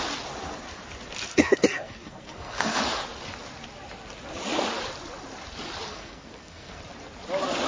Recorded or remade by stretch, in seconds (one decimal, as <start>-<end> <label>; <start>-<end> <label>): 0.0-1.3 recorded; 1.3-2.8 remade; 2.8-5.9 recorded; 5.9-6.8 remade; 6.8-7.7 recorded